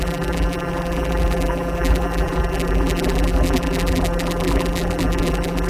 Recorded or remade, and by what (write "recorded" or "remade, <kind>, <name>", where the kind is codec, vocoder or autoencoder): remade, vocoder, BigVGAN v2